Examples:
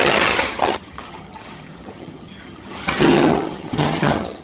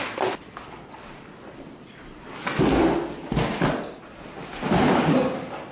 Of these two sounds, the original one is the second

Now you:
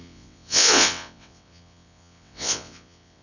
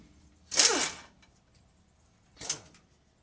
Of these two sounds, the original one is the second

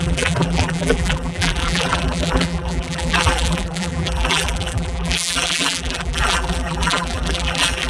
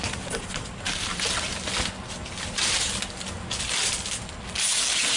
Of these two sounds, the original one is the second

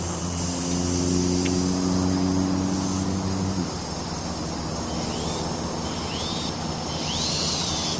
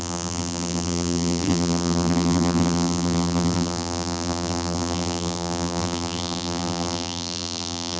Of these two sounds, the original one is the first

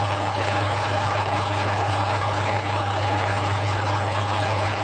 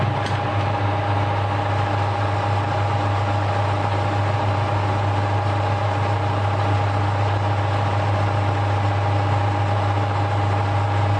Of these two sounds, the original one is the second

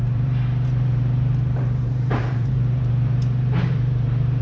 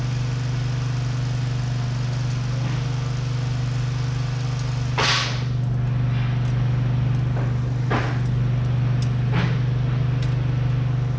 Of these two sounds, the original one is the second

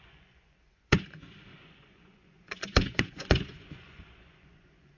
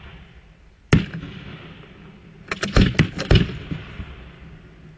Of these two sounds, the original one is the second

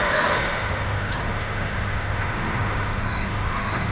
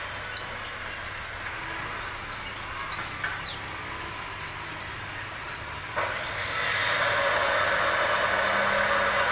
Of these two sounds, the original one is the second